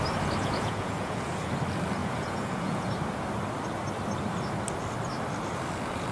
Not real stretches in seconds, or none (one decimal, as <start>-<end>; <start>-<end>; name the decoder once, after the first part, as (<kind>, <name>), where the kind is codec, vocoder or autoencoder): 0.4-1.5 (vocoder, Vocos); 2.0-2.9

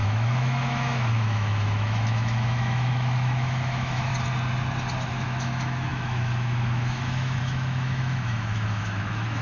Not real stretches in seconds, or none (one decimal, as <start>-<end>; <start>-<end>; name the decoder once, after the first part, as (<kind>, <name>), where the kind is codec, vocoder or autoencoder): 0.0-4.1 (autoencoder, DAC-VAE); 5.1-9.4

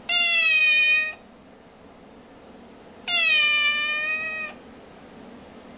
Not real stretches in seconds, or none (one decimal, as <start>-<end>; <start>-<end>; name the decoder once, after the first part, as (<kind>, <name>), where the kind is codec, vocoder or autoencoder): none

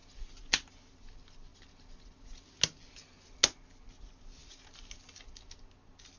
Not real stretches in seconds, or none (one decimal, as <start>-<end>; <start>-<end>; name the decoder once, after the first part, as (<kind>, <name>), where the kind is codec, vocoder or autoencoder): none